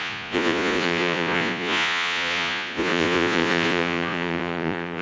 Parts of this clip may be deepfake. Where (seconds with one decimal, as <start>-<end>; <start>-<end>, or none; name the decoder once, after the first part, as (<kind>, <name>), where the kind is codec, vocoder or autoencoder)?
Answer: 0.0-5.0 (vocoder, Vocos)